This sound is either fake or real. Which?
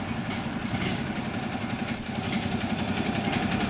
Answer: real